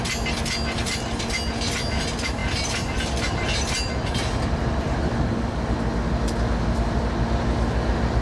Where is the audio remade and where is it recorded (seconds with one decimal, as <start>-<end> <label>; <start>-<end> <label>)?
0.0-8.2 recorded